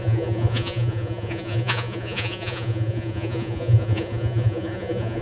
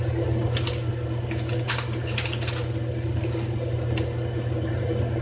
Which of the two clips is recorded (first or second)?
second